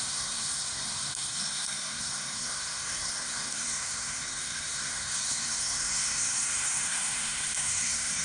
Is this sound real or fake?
fake